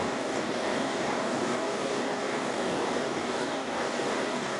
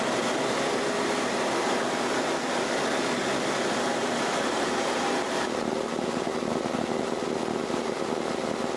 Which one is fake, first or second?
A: first